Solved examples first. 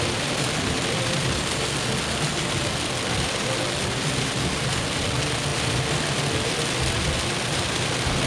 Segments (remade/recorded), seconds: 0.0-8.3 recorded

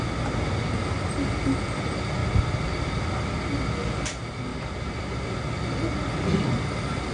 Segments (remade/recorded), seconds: 0.0-7.1 recorded